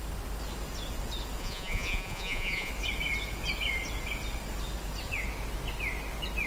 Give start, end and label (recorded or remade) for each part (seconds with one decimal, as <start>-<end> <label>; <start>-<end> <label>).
0.0-1.4 recorded; 1.4-2.7 remade; 2.7-6.5 recorded